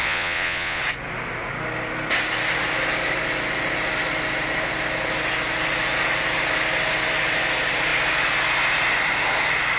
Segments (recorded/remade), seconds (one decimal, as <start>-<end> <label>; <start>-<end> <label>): 0.0-0.8 remade; 0.8-9.8 recorded